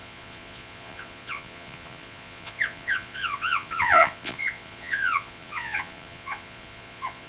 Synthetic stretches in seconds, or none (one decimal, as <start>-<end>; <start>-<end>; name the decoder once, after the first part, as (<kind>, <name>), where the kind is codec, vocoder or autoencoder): 0.0-7.3 (vocoder, Vocos)